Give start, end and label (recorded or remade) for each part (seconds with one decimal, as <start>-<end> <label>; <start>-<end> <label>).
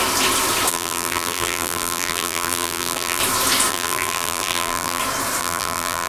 0.0-0.7 recorded; 0.7-3.2 remade; 3.2-3.7 recorded; 3.7-5.0 remade; 5.0-5.4 recorded; 5.4-6.1 remade